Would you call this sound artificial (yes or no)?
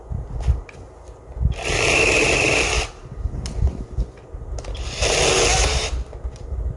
no